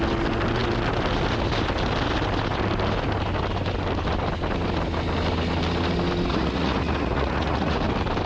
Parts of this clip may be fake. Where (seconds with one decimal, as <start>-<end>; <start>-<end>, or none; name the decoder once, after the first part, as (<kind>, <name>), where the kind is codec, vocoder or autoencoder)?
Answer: 6.3-7.8 (vocoder, Vocos)